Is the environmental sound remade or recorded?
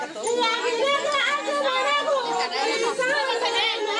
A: recorded